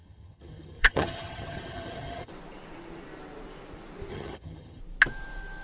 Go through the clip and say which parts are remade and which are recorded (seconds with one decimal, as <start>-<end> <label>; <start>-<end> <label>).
0.0-2.3 remade; 2.3-4.1 recorded; 4.1-4.8 remade; 4.8-5.6 recorded